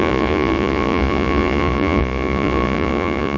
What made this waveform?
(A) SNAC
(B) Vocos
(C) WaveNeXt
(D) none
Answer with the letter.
B